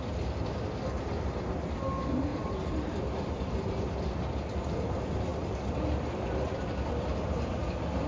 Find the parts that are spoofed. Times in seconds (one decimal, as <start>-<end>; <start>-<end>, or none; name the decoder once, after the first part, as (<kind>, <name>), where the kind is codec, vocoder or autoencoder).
2.3-4.3 (vocoder, BigVGAN v2); 5.3-6.6